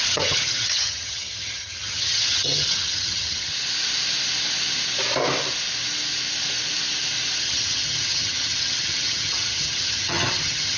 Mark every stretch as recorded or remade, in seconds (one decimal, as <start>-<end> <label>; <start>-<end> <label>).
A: 0.0-3.5 remade; 3.5-7.4 recorded; 7.4-10.8 remade